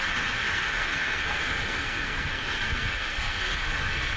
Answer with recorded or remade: remade